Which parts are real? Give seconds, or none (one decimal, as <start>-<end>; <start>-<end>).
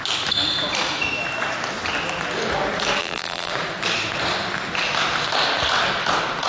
0.0-3.0; 3.5-6.5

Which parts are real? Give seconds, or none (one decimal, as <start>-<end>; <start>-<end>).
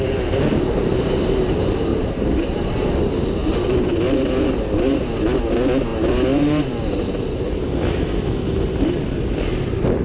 0.0-1.9; 2.7-3.4; 4.9-10.0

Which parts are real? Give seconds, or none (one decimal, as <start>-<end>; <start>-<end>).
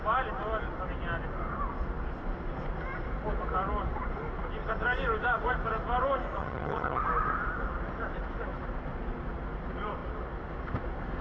0.0-6.4; 7.0-11.2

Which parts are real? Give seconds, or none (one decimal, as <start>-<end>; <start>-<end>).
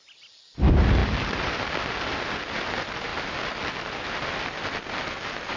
0.0-5.6